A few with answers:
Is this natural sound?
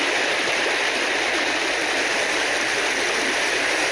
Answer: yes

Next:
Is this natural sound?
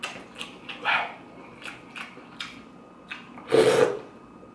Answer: yes